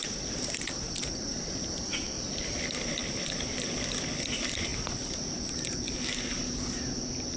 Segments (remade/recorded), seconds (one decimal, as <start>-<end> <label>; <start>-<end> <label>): 0.0-7.4 recorded